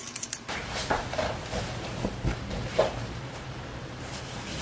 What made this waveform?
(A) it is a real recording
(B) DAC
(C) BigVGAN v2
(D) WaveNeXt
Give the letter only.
C